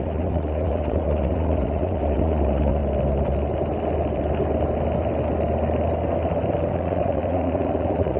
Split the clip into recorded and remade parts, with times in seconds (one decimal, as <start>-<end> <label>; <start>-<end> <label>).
0.0-2.8 remade; 2.8-6.7 recorded; 6.7-8.2 remade